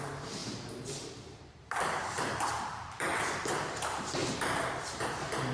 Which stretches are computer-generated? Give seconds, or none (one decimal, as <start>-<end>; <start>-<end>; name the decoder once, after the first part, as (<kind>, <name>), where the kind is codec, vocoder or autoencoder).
0.0-0.4 (vocoder, BigVGAN v2); 1.1-3.1; 3.7-4.2; 4.8-5.5